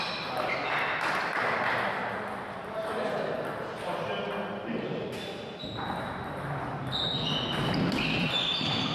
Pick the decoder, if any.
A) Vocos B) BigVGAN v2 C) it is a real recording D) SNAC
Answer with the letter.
C